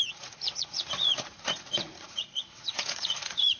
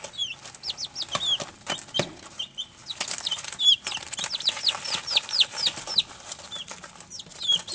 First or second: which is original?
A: second